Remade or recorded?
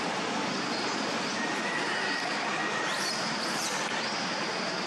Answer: recorded